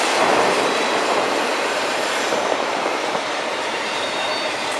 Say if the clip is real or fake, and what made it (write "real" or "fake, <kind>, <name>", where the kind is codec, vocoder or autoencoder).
fake, vocoder, BigVGAN v2